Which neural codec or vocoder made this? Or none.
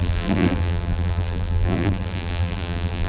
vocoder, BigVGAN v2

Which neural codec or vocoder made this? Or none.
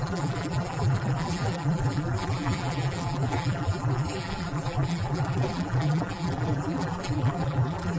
vocoder, BigVGAN v2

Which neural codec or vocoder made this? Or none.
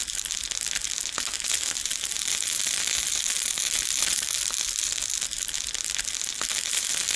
none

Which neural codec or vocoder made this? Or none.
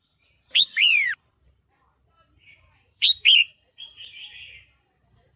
vocoder, BigVGAN v2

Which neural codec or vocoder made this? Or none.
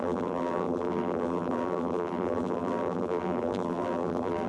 vocoder, BigVGAN v2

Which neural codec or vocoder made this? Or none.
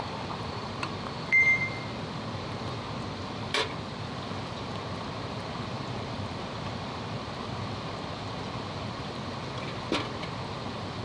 vocoder, BigVGAN v2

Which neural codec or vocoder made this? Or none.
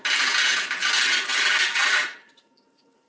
none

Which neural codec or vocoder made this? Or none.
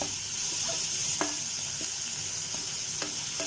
none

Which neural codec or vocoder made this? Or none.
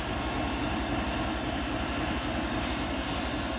none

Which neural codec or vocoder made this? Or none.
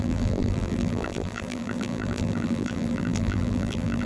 vocoder, BigVGAN v2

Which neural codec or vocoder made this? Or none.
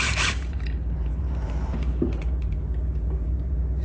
vocoder, BigVGAN v2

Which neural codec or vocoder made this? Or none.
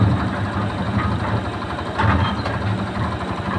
vocoder, BigVGAN v2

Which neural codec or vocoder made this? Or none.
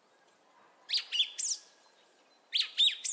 none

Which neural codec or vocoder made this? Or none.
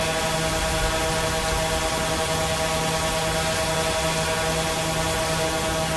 none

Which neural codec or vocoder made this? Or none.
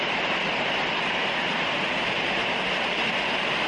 vocoder, BigVGAN v2